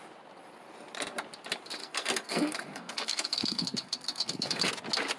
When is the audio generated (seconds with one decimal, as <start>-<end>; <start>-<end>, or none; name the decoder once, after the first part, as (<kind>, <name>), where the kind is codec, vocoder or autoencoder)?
1.8-4.7 (codec, SNAC)